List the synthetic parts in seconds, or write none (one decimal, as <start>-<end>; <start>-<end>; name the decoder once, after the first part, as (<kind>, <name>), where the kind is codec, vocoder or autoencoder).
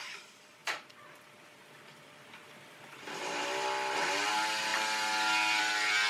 none